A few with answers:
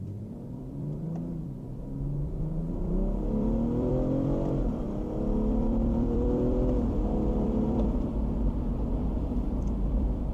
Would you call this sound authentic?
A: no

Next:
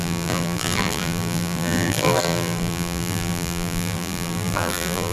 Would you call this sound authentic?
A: no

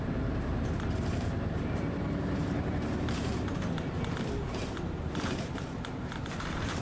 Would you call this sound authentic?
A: no